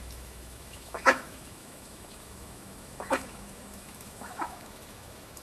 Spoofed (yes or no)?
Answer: yes